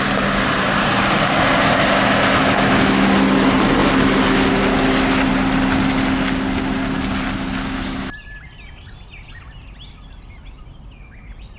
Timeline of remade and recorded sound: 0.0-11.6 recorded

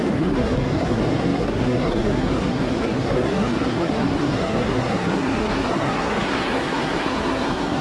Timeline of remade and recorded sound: 0.0-7.8 remade

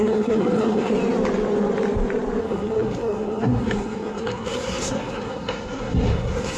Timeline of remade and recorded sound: 0.0-0.9 remade; 0.9-2.4 recorded; 2.4-6.6 remade